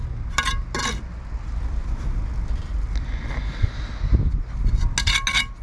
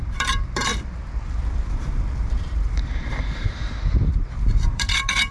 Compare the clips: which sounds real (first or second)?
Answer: first